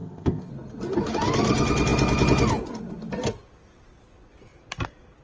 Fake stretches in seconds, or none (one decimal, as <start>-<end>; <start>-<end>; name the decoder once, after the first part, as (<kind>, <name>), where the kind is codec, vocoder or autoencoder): 0.0-0.5 (codec, ZipCodec)